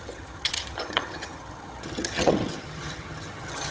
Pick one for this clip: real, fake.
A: fake